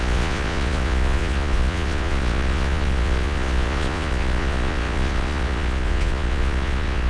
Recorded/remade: remade